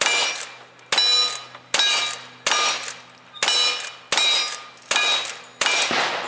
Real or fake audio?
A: real